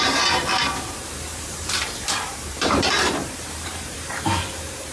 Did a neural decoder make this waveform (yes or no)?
yes